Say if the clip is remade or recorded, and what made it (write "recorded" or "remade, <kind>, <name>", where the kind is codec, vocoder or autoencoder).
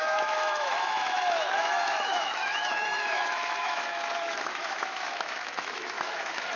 remade, autoencoder, DAC-VAE